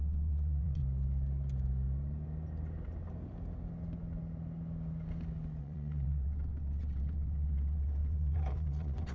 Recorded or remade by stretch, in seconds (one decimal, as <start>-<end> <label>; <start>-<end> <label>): 0.0-0.8 remade; 0.8-5.6 recorded; 5.6-9.1 remade